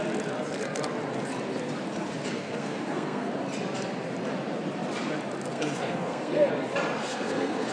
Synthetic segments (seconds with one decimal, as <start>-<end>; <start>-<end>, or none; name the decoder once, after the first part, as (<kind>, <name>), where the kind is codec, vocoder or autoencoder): 2.3-3.3 (codec, SNAC); 5.5-6.5; 7.0-7.7